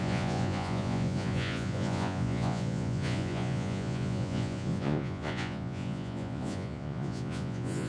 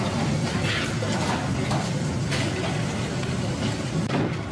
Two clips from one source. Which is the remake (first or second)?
first